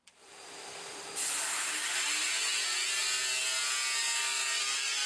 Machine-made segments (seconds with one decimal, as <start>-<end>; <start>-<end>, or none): 0.0-1.1; 4.2-5.1